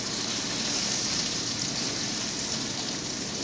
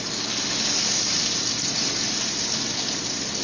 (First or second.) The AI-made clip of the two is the first